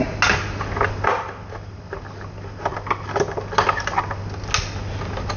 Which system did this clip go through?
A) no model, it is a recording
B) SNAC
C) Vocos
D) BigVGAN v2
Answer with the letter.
A